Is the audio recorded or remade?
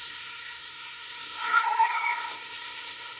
remade